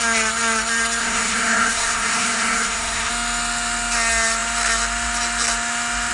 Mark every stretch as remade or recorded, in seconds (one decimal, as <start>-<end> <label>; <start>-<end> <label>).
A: 0.0-1.0 recorded; 1.0-3.1 remade; 3.1-6.1 recorded